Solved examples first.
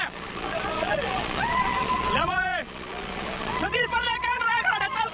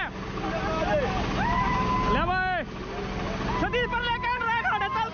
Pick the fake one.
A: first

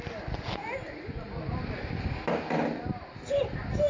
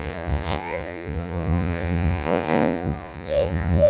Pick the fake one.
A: second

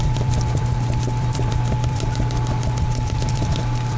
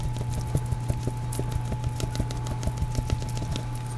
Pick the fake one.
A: first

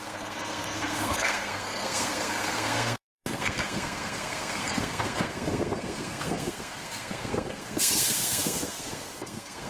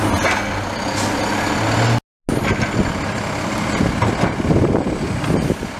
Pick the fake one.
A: first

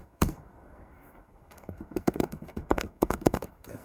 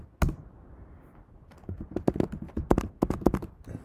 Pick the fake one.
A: first